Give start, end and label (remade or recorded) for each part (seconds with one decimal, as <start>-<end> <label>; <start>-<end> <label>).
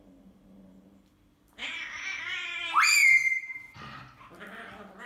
0.0-1.6 recorded; 1.6-2.2 remade; 2.2-3.0 recorded; 3.0-4.0 remade; 4.0-5.1 recorded